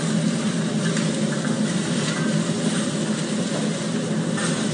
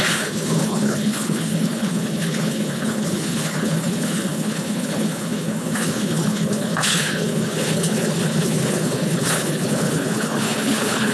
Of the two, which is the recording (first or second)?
first